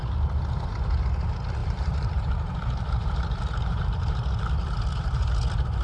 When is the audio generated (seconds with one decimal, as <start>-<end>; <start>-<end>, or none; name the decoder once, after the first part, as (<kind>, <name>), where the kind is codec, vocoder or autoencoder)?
1.6-4.5 (vocoder, BigVGAN v2)